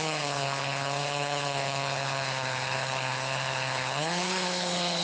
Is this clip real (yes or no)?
no